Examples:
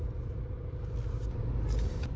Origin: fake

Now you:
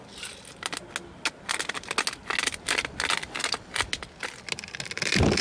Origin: real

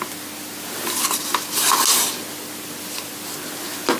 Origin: real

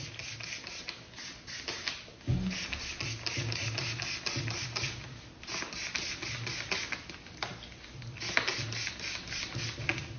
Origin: real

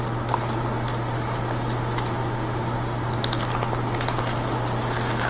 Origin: real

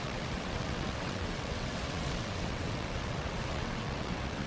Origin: fake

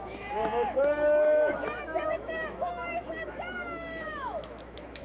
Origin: fake